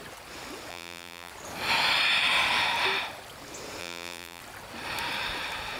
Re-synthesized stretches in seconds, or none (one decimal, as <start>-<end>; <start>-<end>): 0.7-1.3; 3.8-4.4

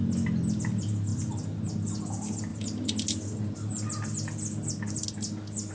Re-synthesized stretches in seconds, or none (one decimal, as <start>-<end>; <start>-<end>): none

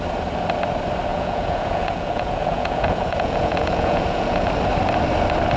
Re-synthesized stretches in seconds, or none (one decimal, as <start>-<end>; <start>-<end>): 1.1-4.5

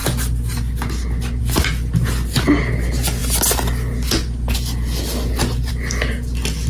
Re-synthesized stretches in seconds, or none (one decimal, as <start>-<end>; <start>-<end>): none

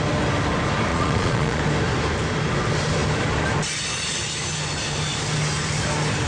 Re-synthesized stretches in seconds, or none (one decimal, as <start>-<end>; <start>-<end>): 0.9-1.6

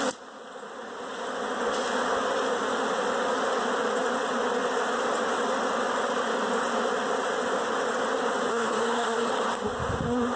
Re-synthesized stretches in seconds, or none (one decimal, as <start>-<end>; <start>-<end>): 8.5-9.3